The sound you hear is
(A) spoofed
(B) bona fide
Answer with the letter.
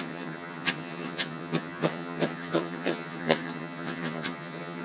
A